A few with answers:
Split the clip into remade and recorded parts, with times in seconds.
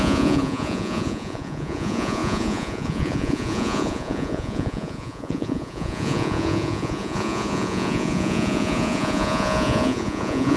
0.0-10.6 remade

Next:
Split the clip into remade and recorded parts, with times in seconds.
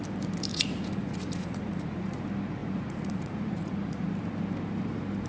0.0-0.5 recorded; 0.5-2.2 remade; 2.2-2.6 recorded; 2.6-4.1 remade; 4.1-5.3 recorded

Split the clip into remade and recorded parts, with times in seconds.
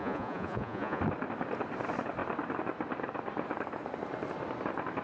0.0-1.0 remade; 1.0-5.0 recorded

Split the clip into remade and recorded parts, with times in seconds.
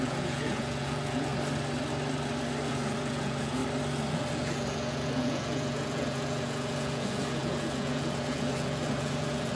0.0-1.3 remade; 1.3-2.7 recorded; 2.7-3.6 remade; 3.6-4.1 recorded; 4.1-9.6 remade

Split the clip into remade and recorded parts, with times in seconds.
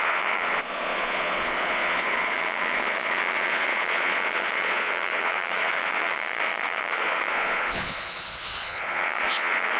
0.0-9.8 remade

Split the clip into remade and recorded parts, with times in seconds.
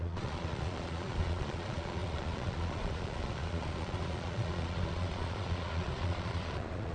0.0-6.9 remade